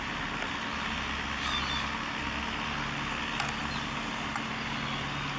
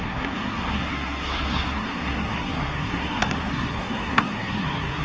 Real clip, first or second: first